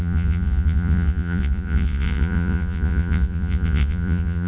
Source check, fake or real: fake